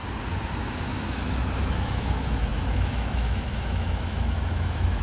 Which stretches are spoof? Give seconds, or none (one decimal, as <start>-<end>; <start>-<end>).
0.6-5.0